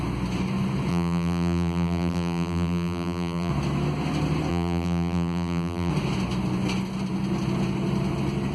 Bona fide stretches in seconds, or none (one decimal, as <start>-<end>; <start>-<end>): 0.0-0.9; 3.5-4.5; 5.9-8.5